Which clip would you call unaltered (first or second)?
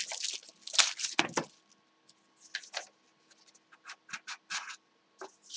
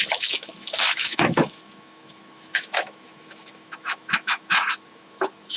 first